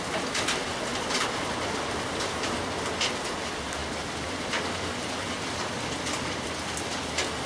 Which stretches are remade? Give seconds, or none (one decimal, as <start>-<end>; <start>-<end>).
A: 0.9-2.4; 3.8-7.0